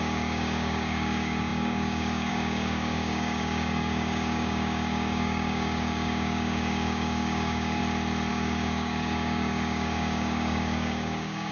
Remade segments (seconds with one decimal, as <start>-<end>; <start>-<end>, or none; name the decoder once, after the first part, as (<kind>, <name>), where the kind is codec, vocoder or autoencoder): 0.0-7.8 (codec, DAC); 8.3-11.5